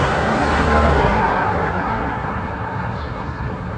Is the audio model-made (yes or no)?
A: yes